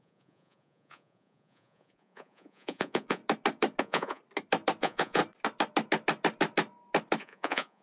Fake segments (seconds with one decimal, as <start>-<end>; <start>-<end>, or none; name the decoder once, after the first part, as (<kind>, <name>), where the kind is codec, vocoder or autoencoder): 0.0-3.2 (vocoder, Vocos); 3.8-4.2; 4.8-5.2; 7.2-7.8